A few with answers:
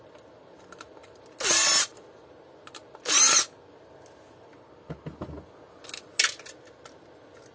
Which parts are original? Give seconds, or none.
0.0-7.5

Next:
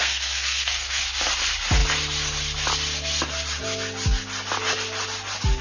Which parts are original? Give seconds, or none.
1.0-5.6

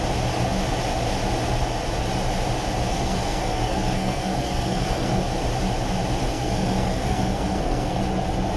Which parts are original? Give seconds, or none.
0.0-2.9; 5.2-6.3; 8.0-8.6

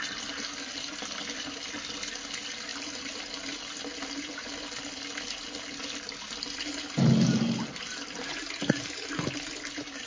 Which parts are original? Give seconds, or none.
0.0-10.1

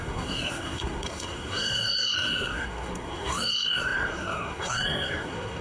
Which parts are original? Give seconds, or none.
none

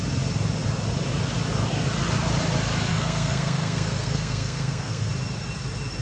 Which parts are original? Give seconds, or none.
0.0-2.9; 5.1-6.0

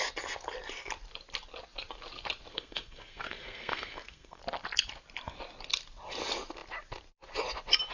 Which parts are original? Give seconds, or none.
0.0-2.5; 4.4-7.9

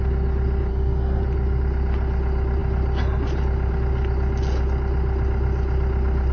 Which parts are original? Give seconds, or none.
0.0-0.7; 1.2-6.3